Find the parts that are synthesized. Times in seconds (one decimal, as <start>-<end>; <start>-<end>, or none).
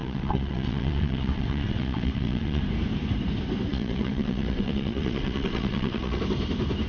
0.0-2.6; 3.7-6.2